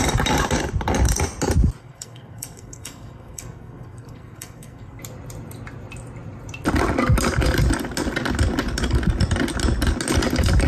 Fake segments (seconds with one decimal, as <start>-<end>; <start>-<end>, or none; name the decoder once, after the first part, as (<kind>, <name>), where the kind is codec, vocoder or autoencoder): 1.8-5.0 (codec, SNAC)